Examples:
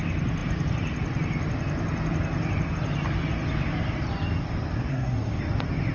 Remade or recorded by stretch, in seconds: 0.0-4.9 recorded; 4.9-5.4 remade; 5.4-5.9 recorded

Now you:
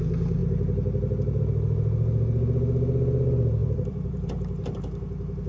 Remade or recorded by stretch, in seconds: 0.0-3.6 recorded; 3.6-4.8 remade; 4.8-5.5 recorded

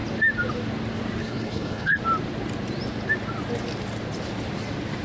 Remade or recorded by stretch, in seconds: 0.0-1.2 recorded; 1.2-2.0 remade; 2.0-5.0 recorded

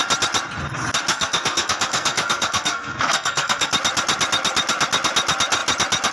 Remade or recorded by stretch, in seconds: 0.0-1.1 recorded; 1.1-3.7 remade; 3.7-6.1 recorded

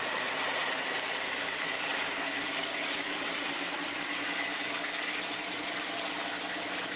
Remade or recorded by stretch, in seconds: 0.0-7.0 recorded

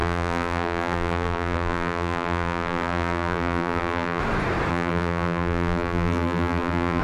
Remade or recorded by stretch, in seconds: 0.0-4.2 remade; 4.2-4.7 recorded; 4.7-7.0 remade

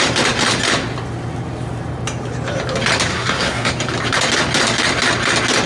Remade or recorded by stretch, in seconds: 0.0-3.1 recorded; 3.1-3.7 remade; 3.7-5.7 recorded